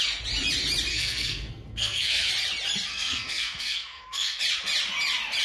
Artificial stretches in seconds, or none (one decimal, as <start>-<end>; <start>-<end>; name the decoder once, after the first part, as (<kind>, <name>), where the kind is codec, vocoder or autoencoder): 0.9-2.3 (codec, SNAC); 2.9-4.4